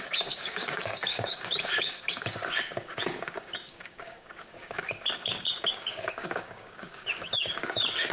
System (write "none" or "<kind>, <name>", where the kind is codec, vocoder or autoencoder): codec, DAC